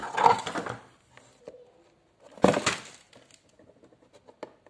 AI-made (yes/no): no